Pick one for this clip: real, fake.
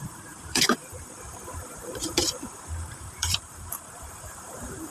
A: fake